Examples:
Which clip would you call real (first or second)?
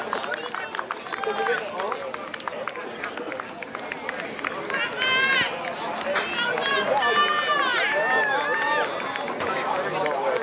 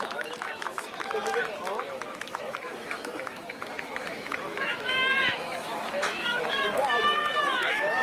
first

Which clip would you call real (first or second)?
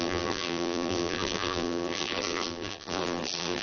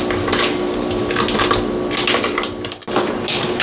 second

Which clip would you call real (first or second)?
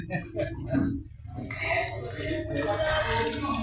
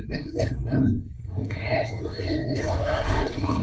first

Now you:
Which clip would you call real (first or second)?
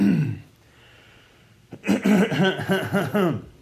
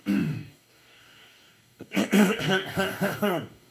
first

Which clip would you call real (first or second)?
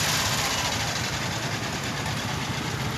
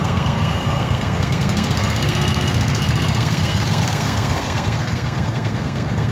first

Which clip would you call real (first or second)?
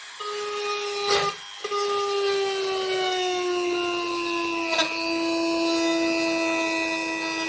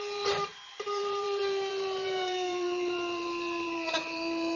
first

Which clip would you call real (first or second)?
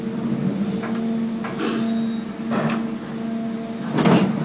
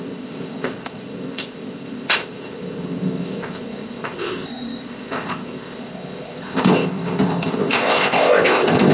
first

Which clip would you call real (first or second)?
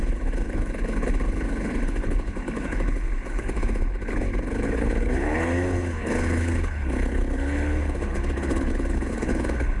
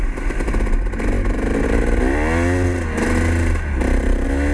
second